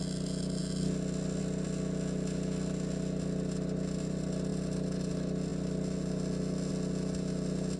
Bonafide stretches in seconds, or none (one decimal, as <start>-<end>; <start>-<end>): 0.0-7.8